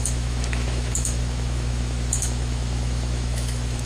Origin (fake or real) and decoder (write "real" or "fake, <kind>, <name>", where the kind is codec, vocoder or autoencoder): fake, autoencoder, DAC-VAE